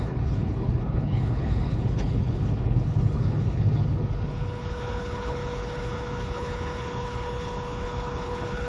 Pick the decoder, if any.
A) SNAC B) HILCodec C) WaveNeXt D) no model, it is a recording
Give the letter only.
B